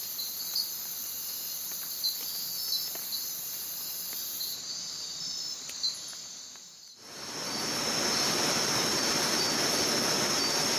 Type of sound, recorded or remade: recorded